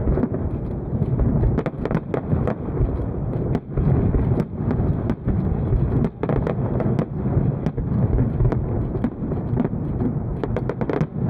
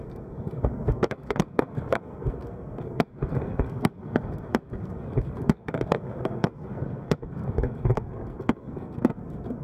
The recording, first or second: first